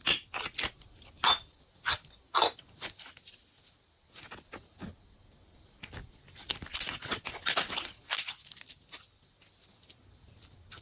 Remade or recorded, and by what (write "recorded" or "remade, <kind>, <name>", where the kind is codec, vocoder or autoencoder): recorded